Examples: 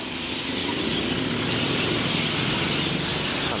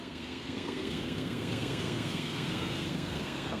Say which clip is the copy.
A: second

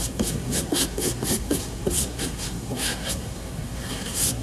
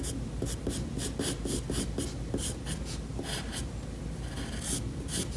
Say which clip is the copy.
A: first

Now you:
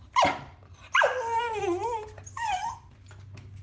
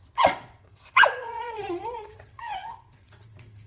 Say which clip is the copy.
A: second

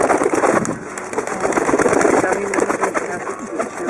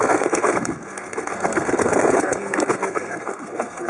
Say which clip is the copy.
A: second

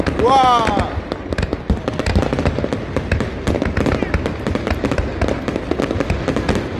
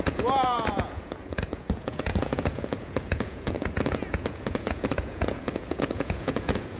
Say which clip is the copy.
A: second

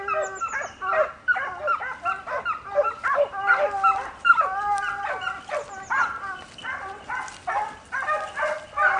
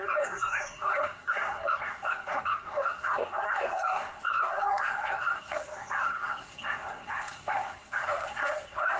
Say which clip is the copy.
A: second